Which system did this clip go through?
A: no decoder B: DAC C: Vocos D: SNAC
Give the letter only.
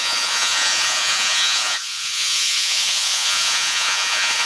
C